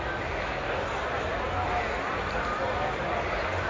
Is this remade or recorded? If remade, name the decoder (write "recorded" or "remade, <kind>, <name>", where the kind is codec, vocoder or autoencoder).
recorded